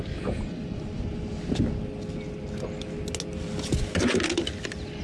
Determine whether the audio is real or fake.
real